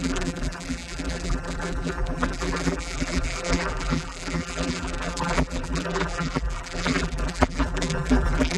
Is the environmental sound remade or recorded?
remade